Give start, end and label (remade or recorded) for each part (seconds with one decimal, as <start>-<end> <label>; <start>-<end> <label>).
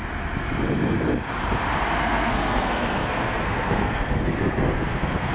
0.0-2.0 recorded; 2.0-5.3 remade